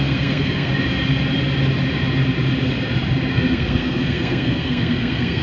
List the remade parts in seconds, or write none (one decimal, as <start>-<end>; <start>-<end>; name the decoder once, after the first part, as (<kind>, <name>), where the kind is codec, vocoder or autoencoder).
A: 0.0-0.7 (codec, SNAC); 3.3-5.4